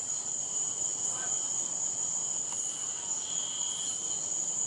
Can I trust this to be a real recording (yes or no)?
yes